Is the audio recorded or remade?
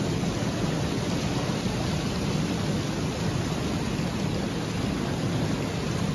recorded